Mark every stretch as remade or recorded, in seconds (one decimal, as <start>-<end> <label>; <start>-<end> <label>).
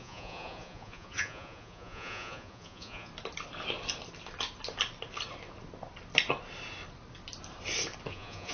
0.0-3.1 remade; 3.1-8.1 recorded; 8.1-8.5 remade